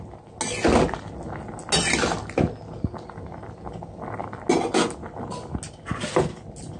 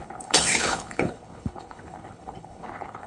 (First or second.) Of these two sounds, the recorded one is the first